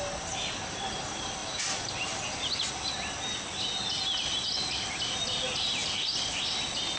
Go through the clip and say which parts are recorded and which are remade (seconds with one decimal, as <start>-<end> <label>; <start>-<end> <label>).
0.0-1.4 recorded; 1.4-2.7 remade; 2.7-5.8 recorded; 5.8-6.4 remade; 6.4-7.0 recorded